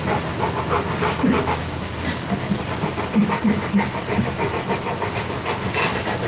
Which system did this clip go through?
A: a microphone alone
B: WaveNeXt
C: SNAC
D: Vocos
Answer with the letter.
A